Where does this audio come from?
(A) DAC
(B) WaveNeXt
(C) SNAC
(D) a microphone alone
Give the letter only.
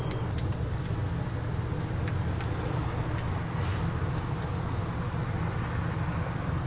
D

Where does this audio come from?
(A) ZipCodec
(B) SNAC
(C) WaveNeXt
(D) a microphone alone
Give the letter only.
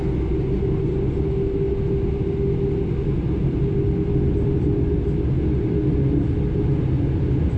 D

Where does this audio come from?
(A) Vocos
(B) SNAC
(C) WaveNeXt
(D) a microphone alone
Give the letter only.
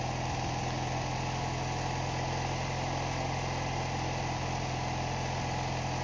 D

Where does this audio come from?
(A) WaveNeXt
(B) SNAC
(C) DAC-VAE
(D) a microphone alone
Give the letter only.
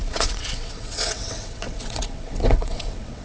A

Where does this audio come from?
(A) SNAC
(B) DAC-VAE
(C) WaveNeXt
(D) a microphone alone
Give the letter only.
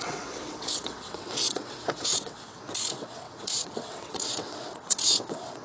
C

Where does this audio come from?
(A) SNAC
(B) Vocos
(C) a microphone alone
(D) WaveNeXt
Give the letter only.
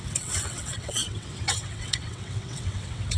D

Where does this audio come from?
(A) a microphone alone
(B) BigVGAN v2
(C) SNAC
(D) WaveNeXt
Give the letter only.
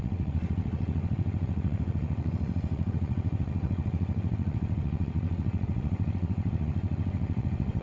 D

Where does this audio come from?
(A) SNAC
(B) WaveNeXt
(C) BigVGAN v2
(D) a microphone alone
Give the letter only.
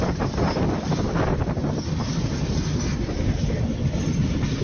D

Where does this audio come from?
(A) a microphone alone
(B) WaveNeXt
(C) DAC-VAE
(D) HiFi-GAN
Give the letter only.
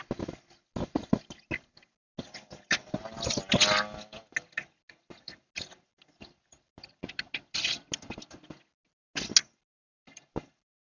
A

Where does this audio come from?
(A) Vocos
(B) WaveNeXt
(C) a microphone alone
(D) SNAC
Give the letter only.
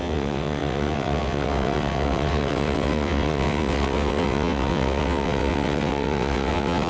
B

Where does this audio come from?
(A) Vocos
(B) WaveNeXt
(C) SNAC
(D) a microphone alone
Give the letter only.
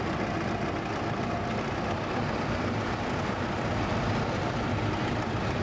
D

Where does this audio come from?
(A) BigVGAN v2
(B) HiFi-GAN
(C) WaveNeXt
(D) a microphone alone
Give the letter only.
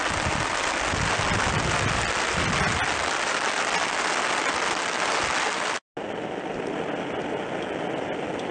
D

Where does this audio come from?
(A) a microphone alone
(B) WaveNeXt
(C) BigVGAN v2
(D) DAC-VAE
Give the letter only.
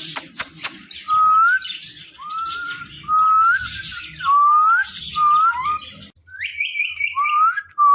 A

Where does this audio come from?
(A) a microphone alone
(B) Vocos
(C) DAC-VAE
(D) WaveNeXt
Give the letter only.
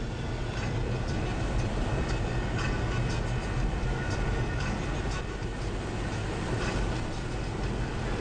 A